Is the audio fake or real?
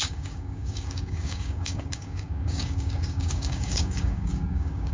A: fake